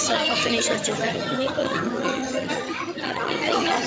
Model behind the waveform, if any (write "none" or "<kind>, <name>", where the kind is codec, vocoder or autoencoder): vocoder, HiFi-GAN